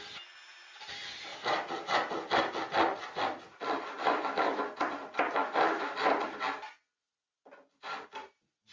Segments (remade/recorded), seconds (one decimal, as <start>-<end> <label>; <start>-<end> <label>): 0.0-4.0 recorded; 4.0-4.6 remade; 4.6-5.4 recorded; 5.4-5.9 remade; 5.9-8.7 recorded